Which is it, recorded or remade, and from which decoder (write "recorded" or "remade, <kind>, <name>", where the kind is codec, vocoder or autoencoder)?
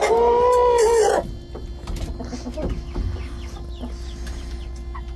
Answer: recorded